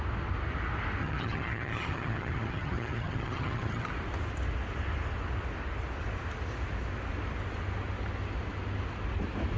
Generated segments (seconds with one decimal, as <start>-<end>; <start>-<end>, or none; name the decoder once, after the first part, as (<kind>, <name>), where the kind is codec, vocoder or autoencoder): 1.0-3.9 (vocoder, HiFi-GAN)